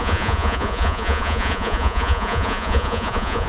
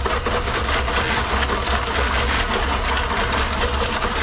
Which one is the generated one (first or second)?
first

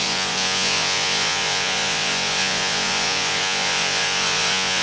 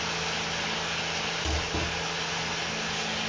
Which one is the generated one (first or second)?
first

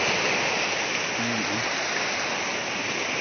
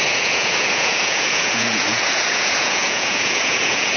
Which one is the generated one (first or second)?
second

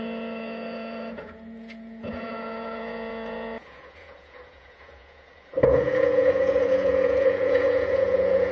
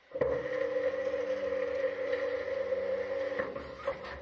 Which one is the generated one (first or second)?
first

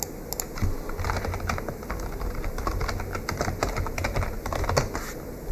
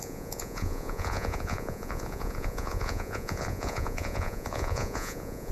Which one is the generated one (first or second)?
second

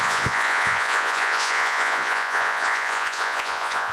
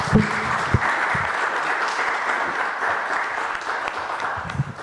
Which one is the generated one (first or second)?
first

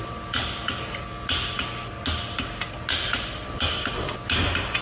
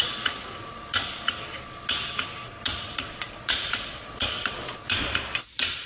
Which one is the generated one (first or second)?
second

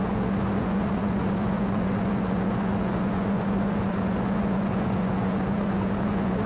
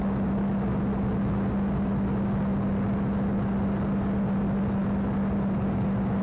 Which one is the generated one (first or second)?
first